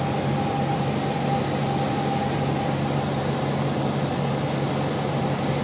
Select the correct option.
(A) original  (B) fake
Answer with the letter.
A